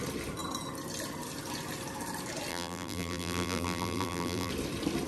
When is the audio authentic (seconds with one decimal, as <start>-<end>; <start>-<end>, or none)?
0.0-2.5; 4.5-5.1